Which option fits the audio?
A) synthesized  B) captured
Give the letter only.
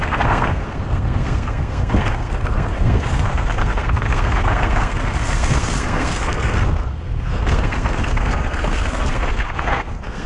A